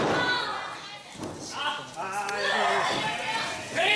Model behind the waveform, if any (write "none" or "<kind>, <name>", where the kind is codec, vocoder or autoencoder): none